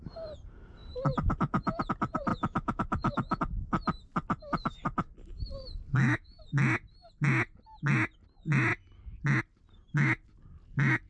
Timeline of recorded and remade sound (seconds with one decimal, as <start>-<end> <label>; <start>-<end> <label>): 0.0-2.3 recorded; 2.3-3.4 remade; 3.4-5.9 recorded; 5.9-6.4 remade; 6.4-11.1 recorded